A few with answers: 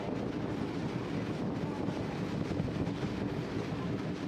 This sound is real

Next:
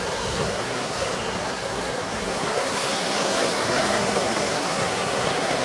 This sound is fake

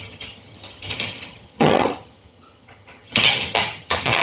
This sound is fake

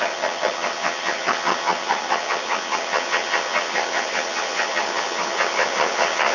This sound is fake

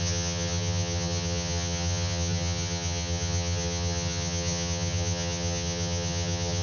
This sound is fake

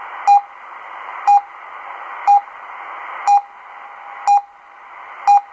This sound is real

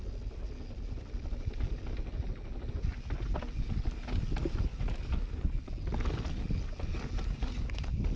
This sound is real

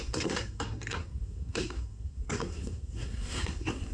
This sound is fake